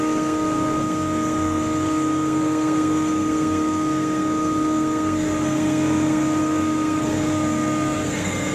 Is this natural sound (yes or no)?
no